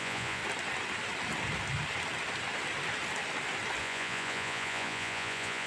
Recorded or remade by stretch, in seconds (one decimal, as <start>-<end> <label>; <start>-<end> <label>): 0.0-0.4 remade; 0.4-3.8 recorded; 3.8-5.7 remade